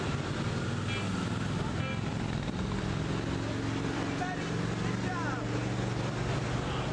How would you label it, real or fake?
real